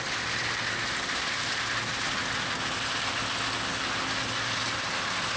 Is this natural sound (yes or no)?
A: yes